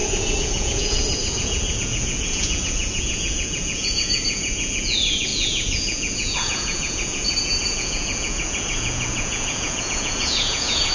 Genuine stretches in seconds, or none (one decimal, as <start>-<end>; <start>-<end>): none